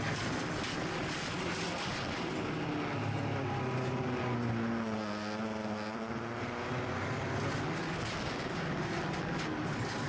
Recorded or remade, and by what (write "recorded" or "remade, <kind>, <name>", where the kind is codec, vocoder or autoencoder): recorded